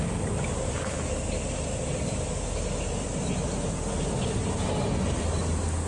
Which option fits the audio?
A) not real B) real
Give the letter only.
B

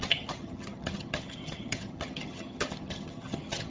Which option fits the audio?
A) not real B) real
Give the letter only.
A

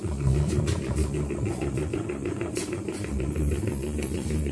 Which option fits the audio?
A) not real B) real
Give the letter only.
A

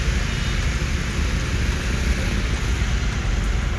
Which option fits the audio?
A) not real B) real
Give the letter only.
B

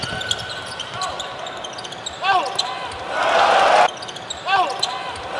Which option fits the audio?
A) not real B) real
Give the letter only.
B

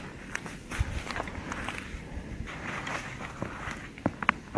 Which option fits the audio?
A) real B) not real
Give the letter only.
A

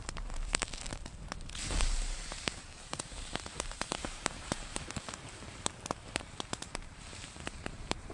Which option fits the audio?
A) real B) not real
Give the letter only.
B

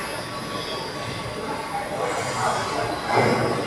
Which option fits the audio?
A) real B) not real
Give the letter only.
A